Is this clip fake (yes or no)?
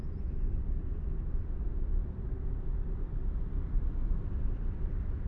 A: yes